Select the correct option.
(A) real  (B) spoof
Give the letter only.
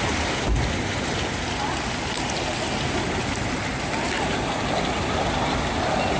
A